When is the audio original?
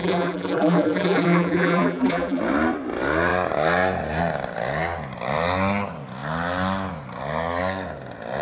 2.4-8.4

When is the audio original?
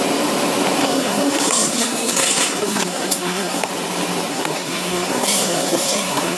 0.0-0.8; 3.7-4.3